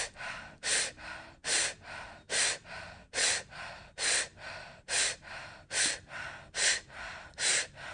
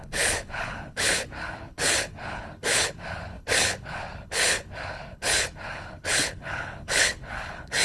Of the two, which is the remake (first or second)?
second